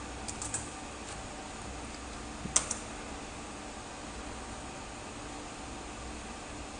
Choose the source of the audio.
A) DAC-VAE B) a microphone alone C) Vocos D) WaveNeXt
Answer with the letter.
B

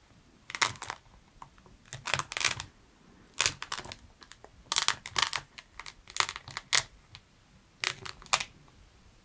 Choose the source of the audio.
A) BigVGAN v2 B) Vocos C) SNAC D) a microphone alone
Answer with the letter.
D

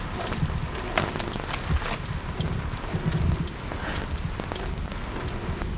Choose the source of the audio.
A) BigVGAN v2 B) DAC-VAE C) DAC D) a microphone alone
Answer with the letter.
D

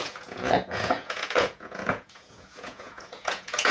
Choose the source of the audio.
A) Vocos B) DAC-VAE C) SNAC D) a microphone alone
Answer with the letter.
A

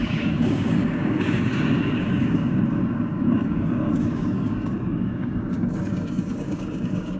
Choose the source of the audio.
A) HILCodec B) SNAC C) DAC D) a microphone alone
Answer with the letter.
C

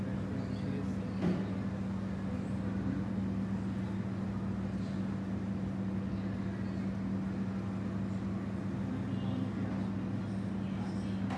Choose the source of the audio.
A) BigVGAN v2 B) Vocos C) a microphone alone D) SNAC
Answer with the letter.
C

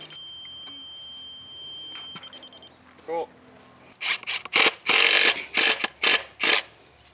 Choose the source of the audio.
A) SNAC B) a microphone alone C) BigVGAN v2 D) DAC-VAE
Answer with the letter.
B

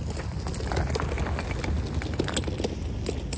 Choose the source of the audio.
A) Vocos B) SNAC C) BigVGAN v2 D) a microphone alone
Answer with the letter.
D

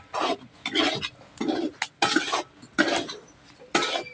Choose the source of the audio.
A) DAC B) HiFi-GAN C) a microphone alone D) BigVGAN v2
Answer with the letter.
C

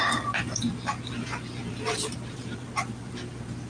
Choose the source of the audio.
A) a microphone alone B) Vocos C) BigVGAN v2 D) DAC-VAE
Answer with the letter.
A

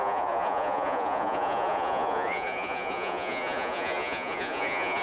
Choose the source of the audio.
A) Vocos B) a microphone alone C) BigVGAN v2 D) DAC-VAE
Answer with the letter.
A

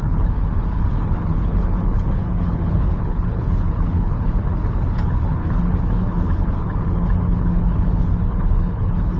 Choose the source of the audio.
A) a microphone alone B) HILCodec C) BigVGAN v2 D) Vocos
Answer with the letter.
B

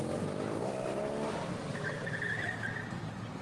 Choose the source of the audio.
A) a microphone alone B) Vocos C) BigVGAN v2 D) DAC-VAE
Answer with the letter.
A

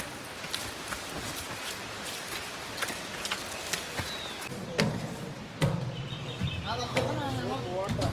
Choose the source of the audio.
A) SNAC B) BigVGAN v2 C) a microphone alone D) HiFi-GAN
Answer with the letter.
C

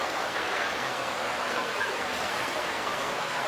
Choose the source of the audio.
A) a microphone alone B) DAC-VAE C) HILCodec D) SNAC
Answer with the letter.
D